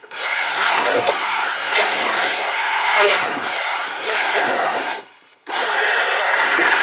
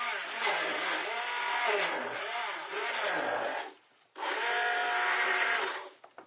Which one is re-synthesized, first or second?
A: first